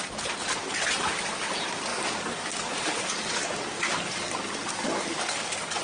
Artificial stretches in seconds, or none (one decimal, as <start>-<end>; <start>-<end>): 1.9-5.8